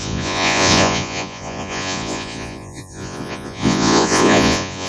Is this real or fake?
fake